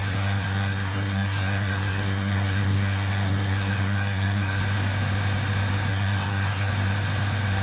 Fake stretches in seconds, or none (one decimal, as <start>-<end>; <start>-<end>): 0.0-4.6; 5.9-6.7